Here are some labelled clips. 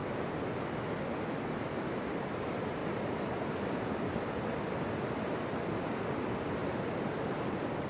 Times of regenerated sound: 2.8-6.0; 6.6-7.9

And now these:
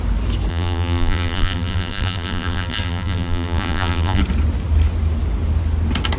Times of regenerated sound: 0.5-4.2

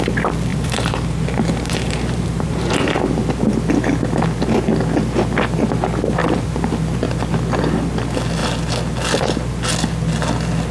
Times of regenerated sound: 0.5-3.1; 6.2-6.7

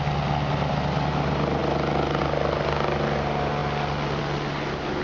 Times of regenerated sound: none

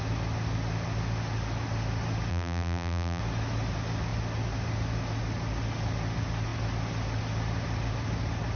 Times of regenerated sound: 2.3-3.2